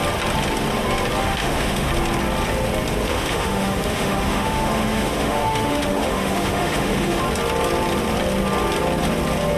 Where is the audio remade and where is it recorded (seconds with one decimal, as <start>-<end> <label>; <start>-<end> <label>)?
0.0-1.2 recorded; 1.2-1.9 remade; 1.9-3.0 recorded; 3.0-7.2 remade; 7.2-9.6 recorded